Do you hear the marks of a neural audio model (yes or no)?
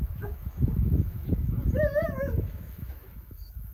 yes